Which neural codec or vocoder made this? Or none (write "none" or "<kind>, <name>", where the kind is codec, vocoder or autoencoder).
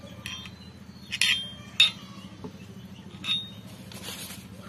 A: none